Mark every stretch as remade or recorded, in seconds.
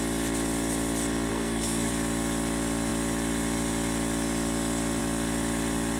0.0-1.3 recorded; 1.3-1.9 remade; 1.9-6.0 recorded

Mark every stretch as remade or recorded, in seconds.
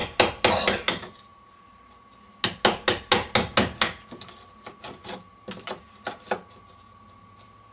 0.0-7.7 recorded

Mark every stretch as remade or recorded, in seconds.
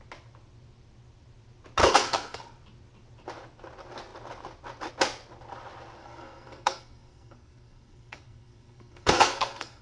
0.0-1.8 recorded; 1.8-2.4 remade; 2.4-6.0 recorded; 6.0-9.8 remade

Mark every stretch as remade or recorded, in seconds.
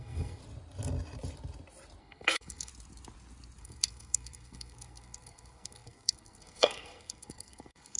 0.0-0.4 remade; 0.4-2.0 recorded; 2.0-2.7 remade; 2.7-3.6 recorded; 3.6-8.0 remade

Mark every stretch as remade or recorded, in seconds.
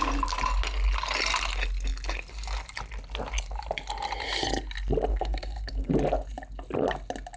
0.0-5.1 recorded; 5.1-5.9 remade; 5.9-7.4 recorded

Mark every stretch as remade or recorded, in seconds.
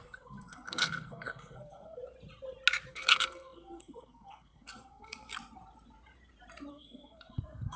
0.0-2.0 remade; 2.0-2.9 recorded; 2.9-5.3 remade; 5.3-6.7 recorded; 6.7-7.8 remade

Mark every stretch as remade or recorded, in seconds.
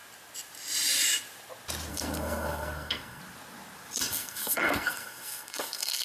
0.0-1.9 recorded; 1.9-3.2 remade; 3.2-4.0 recorded; 4.0-6.0 remade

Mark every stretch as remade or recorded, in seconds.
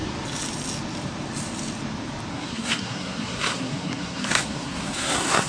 0.0-2.3 recorded; 2.3-5.5 remade